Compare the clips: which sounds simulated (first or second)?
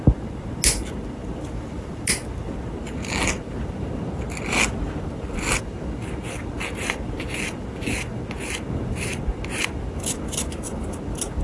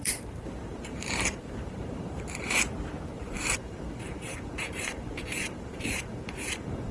second